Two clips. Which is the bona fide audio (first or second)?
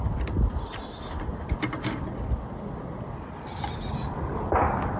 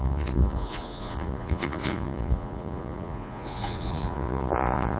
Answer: first